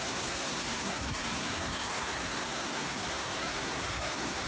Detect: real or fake fake